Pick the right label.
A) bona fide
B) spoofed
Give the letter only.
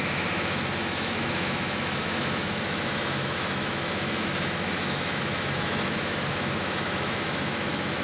B